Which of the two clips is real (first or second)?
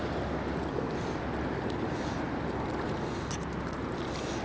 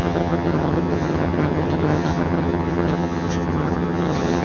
first